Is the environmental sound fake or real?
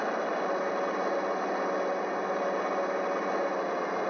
real